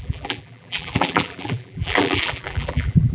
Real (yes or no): no